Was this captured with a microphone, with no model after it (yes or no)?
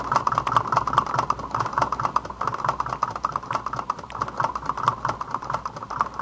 yes